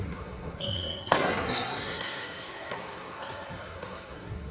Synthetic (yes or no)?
yes